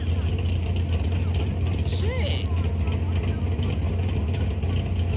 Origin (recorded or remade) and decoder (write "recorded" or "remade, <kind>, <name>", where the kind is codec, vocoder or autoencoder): recorded